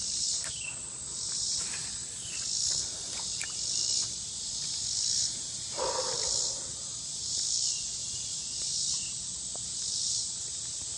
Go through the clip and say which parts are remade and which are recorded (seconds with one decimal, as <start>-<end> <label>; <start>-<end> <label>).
0.0-8.0 recorded; 8.0-8.7 remade; 8.7-11.0 recorded

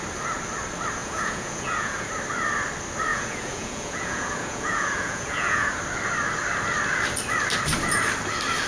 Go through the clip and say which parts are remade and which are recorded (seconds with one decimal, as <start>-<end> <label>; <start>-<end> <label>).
0.0-1.0 recorded; 1.0-2.1 remade; 2.1-3.1 recorded; 3.1-5.7 remade; 5.7-8.7 recorded

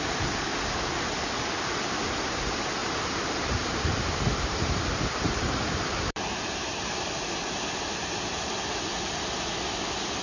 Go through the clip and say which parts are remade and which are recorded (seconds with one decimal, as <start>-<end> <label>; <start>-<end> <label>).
0.0-2.8 recorded; 2.8-6.7 remade; 6.7-10.2 recorded

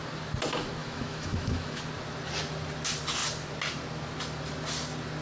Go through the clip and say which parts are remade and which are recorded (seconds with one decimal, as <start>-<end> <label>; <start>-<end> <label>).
0.0-0.8 recorded; 0.8-1.8 remade; 1.8-5.2 recorded

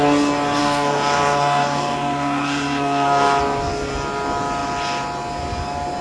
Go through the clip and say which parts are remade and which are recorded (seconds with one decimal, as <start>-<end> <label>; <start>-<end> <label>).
0.0-0.6 recorded; 0.6-3.4 remade; 3.4-6.0 recorded

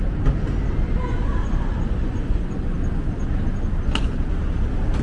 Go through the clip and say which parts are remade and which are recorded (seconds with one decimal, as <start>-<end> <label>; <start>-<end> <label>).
0.0-1.4 recorded; 1.4-2.6 remade; 2.6-5.0 recorded

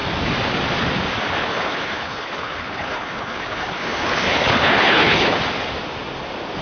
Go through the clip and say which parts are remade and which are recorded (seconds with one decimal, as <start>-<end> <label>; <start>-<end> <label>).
0.0-1.4 recorded; 1.4-5.4 remade; 5.4-6.6 recorded

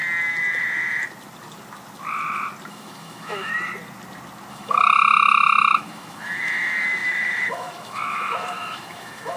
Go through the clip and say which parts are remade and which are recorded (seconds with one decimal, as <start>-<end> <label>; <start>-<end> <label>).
0.0-2.7 recorded; 2.7-3.5 remade; 3.5-4.5 recorded; 4.5-9.4 remade